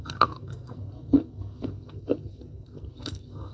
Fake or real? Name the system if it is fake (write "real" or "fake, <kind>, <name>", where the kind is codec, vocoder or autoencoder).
fake, codec, SNAC